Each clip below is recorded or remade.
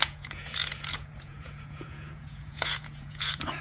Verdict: remade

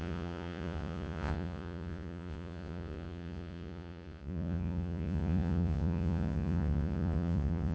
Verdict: remade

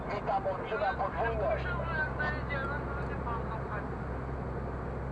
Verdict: recorded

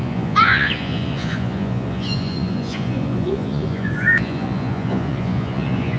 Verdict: remade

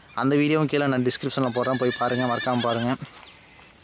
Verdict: recorded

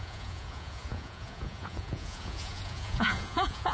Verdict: remade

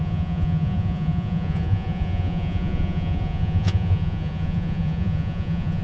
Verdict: remade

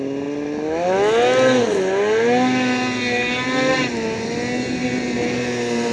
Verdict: recorded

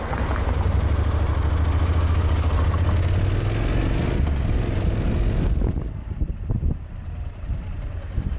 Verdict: recorded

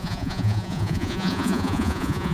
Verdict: remade